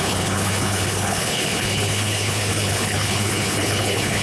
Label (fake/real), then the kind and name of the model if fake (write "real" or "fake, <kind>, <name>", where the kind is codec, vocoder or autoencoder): fake, codec, HILCodec